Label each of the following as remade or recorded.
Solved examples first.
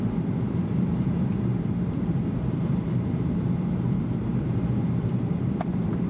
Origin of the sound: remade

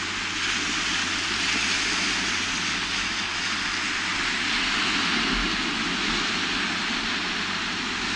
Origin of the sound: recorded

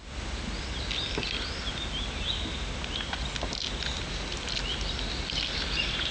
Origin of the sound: recorded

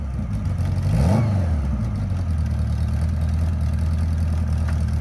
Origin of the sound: recorded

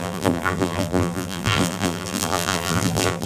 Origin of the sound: remade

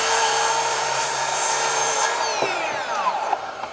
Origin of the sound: remade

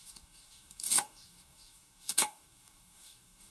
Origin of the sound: remade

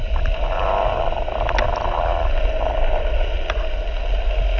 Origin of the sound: recorded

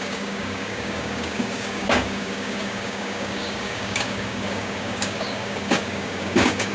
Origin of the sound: remade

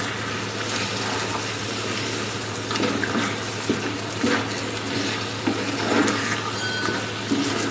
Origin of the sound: recorded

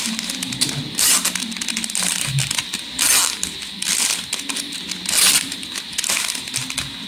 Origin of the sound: recorded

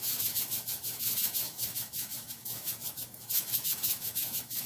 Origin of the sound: remade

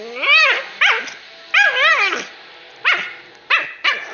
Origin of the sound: remade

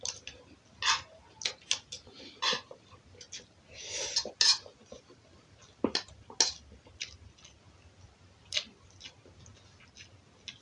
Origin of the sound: recorded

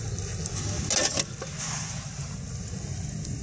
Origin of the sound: recorded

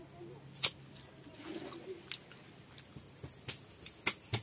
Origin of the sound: recorded